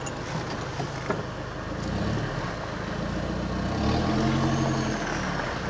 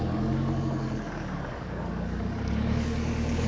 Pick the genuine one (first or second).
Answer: first